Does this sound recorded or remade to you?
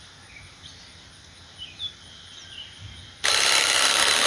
recorded